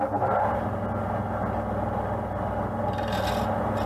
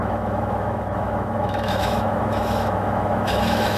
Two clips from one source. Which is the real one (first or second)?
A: first